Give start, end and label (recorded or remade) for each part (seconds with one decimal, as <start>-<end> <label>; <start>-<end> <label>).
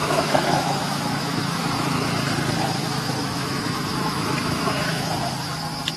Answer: 0.0-2.1 remade; 2.1-2.8 recorded; 2.8-5.2 remade; 5.2-6.0 recorded